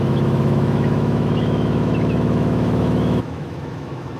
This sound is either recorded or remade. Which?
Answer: remade